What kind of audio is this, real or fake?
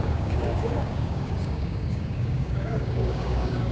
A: fake